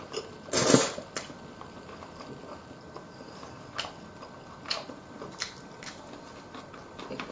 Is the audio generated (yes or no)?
no